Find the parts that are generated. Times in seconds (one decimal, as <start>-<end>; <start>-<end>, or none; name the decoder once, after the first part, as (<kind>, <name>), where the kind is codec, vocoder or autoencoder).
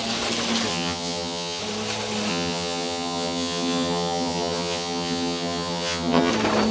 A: 0.7-1.6 (vocoder, HiFi-GAN); 2.3-6.3